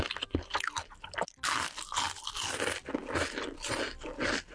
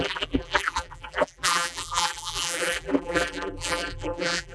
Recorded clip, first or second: first